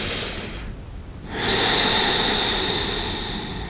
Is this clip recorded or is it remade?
recorded